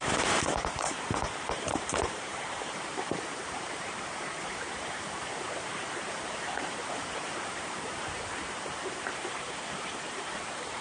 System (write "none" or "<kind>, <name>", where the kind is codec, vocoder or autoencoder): vocoder, BigVGAN v2